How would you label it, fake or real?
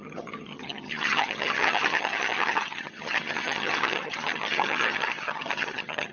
fake